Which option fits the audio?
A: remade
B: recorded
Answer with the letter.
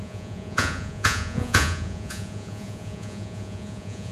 A